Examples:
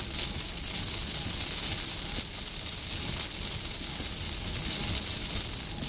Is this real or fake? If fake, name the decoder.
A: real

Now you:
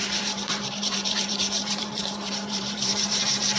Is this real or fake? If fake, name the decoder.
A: fake, vocoder, BigVGAN v2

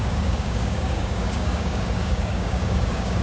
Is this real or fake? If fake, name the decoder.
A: fake, codec, DAC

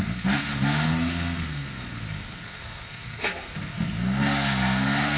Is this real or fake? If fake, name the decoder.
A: fake, codec, SNAC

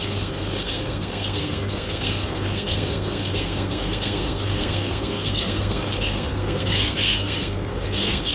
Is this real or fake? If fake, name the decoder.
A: fake, codec, SNAC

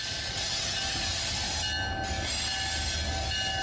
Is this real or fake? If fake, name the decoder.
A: real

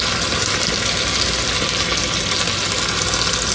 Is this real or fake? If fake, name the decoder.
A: real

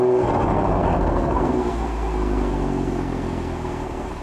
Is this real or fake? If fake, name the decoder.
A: fake, codec, SNAC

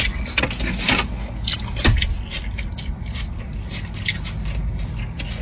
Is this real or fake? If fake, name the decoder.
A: real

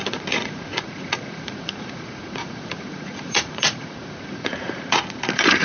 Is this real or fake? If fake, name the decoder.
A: fake, vocoder, Vocos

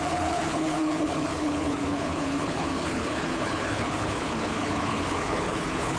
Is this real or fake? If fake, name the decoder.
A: fake, codec, HILCodec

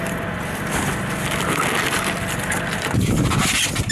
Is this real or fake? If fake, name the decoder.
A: fake, vocoder, BigVGAN v2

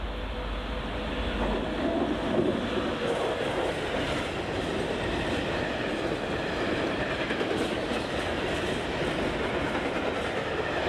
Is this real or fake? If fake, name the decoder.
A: real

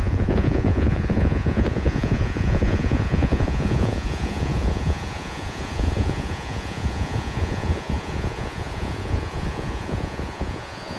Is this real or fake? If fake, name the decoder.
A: fake, vocoder, Vocos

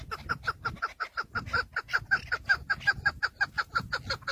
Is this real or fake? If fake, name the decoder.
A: real